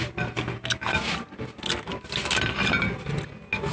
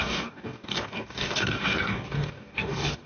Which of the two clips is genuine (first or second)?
first